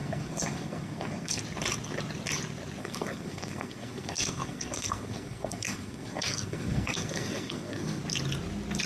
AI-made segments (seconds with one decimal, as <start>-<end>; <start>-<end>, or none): 0.0-1.4; 2.8-8.0